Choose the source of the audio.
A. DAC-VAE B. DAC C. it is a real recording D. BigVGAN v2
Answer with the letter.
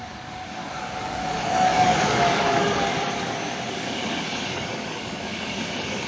B